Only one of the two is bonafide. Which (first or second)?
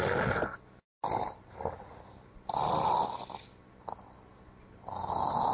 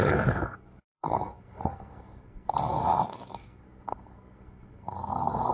first